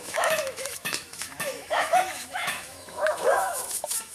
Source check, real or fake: fake